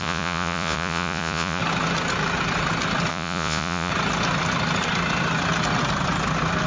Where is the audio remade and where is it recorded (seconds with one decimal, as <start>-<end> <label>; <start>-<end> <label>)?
0.0-1.6 remade; 1.6-3.1 recorded; 3.1-3.9 remade; 3.9-6.7 recorded